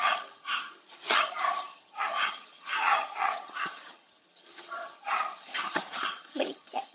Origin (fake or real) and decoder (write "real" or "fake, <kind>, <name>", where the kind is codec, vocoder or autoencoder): fake, vocoder, HiFi-GAN